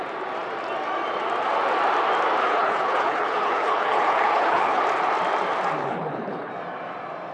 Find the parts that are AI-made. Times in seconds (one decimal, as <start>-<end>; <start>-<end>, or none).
2.4-4.8; 5.8-6.5